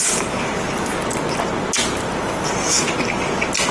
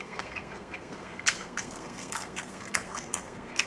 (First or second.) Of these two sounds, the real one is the first